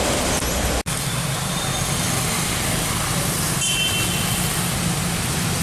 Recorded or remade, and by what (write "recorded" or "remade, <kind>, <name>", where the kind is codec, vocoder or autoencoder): recorded